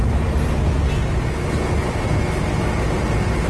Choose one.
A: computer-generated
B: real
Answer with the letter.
B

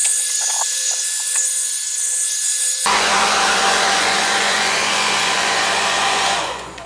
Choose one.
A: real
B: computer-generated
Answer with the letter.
B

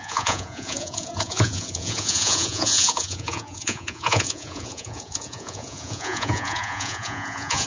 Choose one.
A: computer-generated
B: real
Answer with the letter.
A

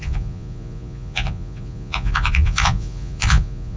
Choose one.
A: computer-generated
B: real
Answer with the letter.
A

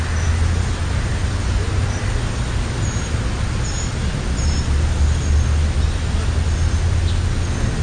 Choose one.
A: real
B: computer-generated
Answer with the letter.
A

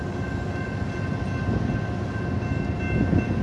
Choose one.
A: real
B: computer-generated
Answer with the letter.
A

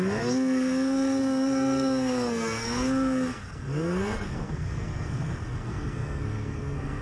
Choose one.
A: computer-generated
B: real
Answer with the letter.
A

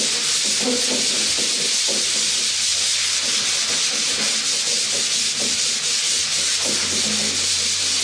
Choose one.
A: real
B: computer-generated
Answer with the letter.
A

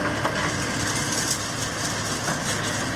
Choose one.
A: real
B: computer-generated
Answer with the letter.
A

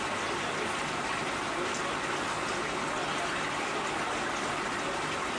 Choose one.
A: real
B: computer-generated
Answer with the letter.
A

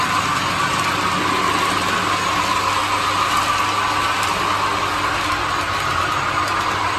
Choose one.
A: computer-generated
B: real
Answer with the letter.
B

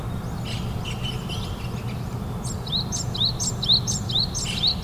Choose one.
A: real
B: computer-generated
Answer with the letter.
A